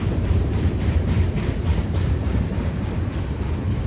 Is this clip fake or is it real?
fake